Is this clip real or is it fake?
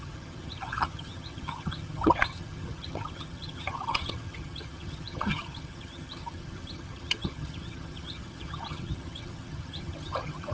fake